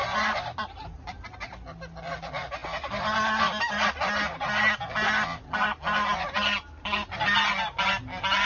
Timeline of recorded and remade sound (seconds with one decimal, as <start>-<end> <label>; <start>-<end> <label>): 0.0-8.5 recorded